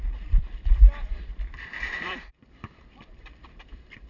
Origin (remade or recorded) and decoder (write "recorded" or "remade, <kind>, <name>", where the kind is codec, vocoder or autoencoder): remade, vocoder, BigVGAN v2